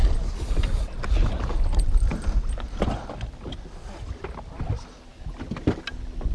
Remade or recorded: recorded